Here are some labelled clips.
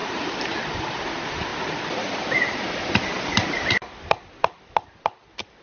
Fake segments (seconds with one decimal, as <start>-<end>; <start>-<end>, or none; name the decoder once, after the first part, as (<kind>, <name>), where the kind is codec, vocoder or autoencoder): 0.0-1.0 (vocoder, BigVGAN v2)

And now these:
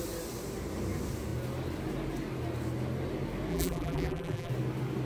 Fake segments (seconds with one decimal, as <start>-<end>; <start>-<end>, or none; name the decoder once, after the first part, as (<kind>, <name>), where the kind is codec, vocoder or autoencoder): 3.5-4.5 (vocoder, BigVGAN v2)

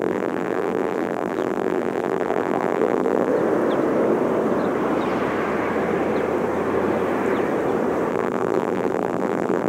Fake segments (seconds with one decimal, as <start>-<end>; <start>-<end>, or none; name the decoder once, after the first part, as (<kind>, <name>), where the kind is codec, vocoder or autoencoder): 0.0-3.3 (vocoder, BigVGAN v2); 8.1-9.7

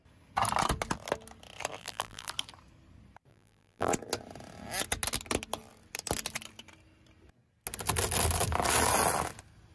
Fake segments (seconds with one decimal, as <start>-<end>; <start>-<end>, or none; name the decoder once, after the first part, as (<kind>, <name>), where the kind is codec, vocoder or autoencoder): 1.8-2.3 (vocoder, BigVGAN v2); 3.3-3.9